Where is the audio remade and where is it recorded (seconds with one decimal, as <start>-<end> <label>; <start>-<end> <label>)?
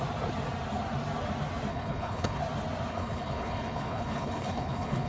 0.0-1.7 recorded; 1.7-2.4 remade; 2.4-2.9 recorded; 2.9-5.1 remade